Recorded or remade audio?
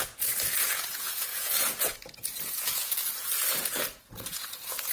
remade